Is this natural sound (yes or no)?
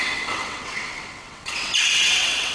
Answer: no